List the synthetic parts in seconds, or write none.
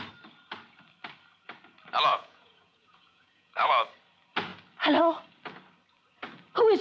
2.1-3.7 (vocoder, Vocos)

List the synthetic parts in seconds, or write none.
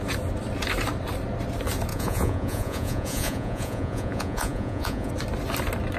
1.9-5.1 (vocoder, Vocos)